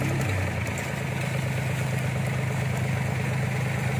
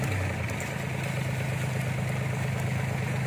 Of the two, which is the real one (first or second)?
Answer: first